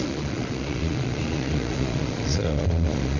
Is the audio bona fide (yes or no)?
no